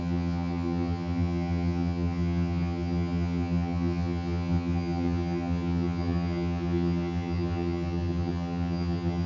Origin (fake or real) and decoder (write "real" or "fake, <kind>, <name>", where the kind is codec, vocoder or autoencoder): fake, vocoder, HiFi-GAN